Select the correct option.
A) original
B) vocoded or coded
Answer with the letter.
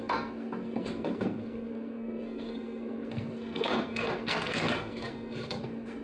B